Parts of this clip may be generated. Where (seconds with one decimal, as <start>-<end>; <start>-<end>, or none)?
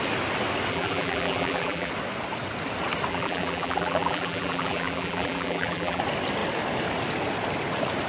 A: 0.7-1.9; 3.1-6.0